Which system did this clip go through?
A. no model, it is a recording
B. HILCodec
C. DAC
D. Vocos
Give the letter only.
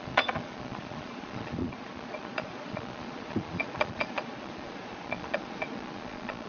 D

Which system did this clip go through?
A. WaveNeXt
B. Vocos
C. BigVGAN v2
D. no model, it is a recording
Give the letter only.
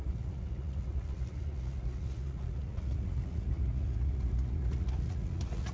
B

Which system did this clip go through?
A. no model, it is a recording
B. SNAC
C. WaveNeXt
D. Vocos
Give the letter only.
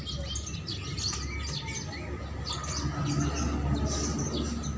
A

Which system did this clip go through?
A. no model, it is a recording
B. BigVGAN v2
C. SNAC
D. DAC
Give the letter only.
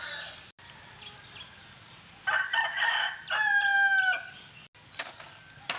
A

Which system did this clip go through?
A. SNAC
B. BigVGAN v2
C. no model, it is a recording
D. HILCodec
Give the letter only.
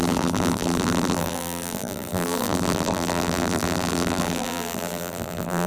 B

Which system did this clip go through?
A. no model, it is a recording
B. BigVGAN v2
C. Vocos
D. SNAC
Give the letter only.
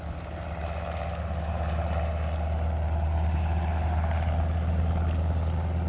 A